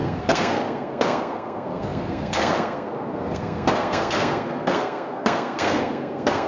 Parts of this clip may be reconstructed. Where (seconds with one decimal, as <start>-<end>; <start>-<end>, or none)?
0.0-6.5